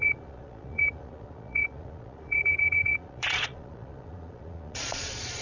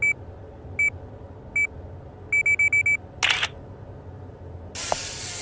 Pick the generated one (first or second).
first